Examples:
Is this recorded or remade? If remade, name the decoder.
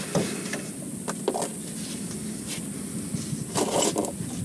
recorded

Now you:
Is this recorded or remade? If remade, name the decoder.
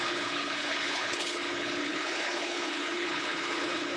remade, codec, HILCodec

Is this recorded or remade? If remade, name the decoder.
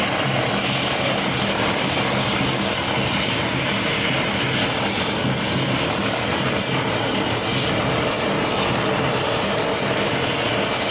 recorded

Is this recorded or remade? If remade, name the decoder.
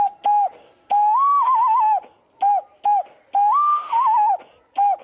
recorded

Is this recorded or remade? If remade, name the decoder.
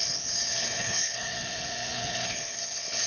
remade, codec, HILCodec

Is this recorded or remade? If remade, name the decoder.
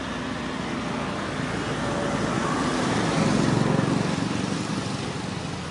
recorded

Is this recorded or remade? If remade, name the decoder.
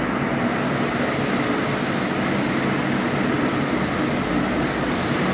recorded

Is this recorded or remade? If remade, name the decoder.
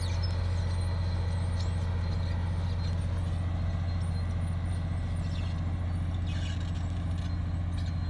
recorded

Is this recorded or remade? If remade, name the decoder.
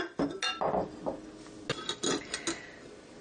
recorded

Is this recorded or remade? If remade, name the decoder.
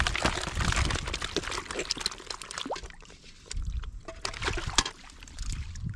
recorded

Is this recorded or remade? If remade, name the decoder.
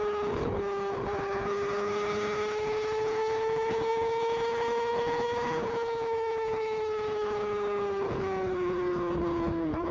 remade, codec, HILCodec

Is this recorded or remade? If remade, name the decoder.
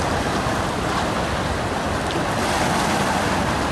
recorded